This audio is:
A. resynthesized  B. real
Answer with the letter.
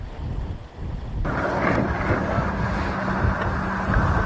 B